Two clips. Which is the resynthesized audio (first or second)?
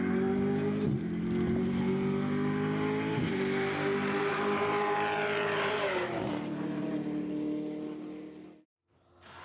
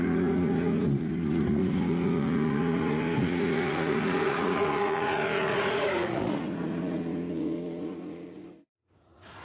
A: second